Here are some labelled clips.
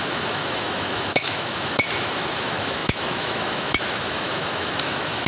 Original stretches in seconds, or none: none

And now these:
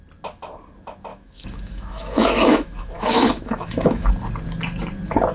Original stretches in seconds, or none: 0.0-1.1; 4.1-5.3

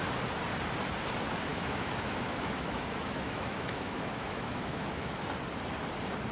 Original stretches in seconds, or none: 0.0-1.5; 5.3-6.3

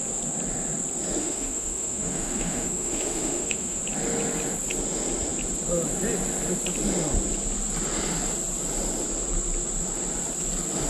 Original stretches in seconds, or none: 0.0-1.2; 3.8-10.9

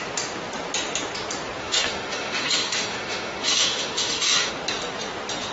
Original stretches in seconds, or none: 0.0-1.6; 4.5-5.5

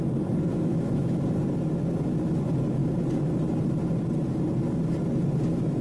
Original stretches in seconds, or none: 0.0-0.5; 1.2-5.8